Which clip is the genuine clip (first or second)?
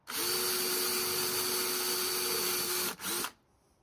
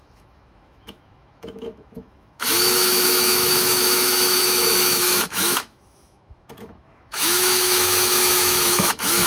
first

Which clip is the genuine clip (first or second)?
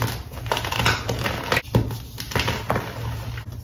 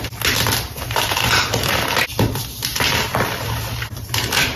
first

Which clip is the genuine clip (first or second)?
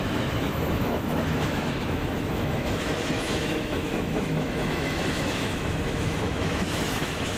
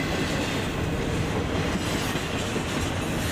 second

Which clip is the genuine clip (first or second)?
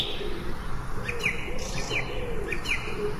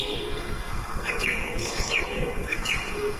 first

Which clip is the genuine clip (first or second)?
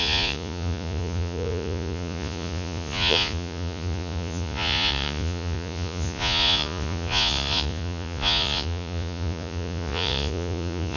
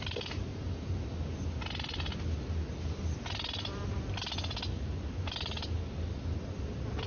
second